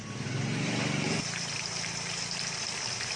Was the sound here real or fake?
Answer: real